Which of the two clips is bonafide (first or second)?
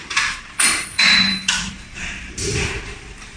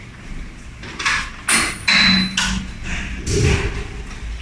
second